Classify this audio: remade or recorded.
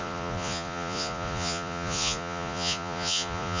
remade